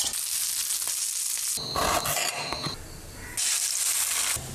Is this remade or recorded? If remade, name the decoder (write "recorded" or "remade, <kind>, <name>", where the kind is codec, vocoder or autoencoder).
recorded